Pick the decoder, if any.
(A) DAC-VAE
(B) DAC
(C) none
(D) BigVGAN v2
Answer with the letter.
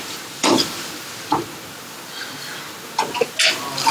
C